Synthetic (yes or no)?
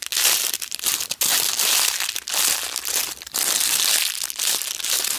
no